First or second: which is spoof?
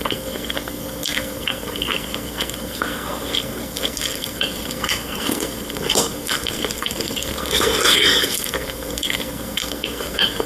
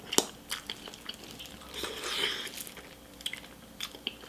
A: first